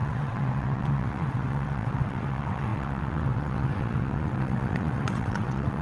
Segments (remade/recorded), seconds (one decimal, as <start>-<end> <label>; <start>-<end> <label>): 0.0-5.8 remade